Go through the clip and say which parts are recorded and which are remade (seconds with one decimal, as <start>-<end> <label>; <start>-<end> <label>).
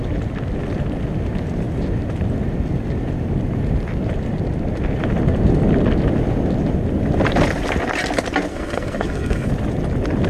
0.0-8.5 recorded; 8.5-9.5 remade; 9.5-10.3 recorded